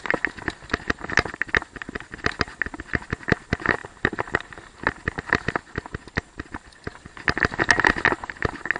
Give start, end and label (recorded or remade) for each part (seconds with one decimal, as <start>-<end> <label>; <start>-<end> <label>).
0.0-8.8 recorded